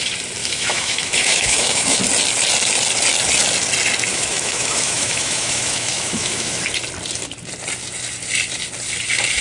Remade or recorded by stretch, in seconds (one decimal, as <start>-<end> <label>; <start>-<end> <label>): 0.0-0.4 recorded; 0.4-2.0 remade; 2.0-4.1 recorded; 4.1-6.6 remade; 6.6-9.4 recorded